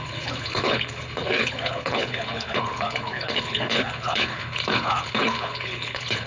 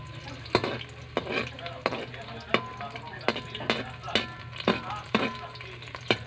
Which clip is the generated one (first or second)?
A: first